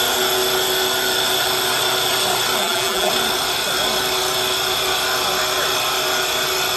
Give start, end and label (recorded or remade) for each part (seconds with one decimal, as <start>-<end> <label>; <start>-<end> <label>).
0.0-2.6 recorded; 2.6-3.1 remade; 3.1-6.8 recorded